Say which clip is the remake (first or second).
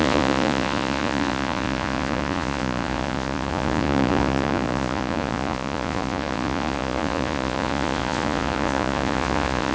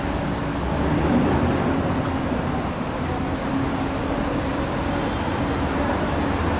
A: first